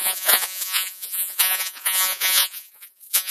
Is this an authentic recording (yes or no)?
no